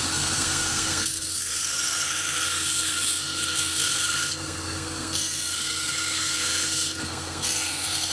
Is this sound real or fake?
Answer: fake